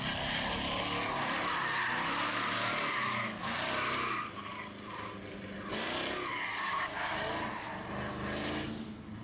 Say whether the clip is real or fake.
real